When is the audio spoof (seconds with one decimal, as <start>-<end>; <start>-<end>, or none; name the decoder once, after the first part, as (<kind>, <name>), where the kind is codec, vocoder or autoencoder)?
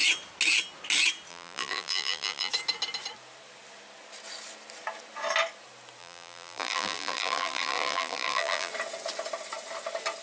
1.3-2.5 (vocoder, BigVGAN v2); 6.0-8.7